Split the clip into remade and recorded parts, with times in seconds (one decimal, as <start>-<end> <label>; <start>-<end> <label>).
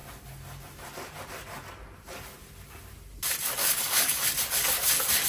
0.0-3.6 recorded; 3.6-4.2 remade; 4.2-5.3 recorded